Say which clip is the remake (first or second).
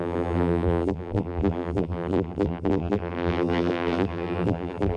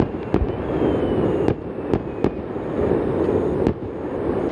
first